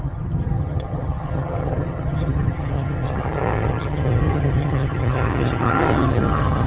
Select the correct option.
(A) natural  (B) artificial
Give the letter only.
B